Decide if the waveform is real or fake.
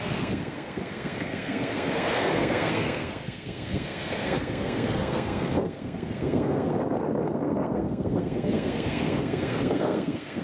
fake